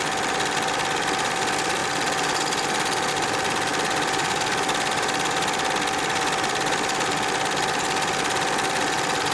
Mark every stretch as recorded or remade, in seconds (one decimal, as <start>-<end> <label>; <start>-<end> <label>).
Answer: 0.0-1.8 recorded; 1.8-3.1 remade; 3.1-9.3 recorded